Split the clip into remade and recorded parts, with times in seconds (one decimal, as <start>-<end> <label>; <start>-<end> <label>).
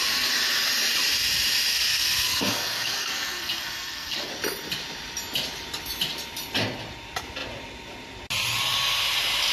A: 0.0-1.7 recorded; 1.7-4.3 remade; 4.3-9.5 recorded